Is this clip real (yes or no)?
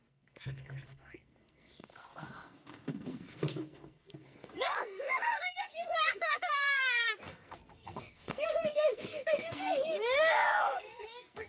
no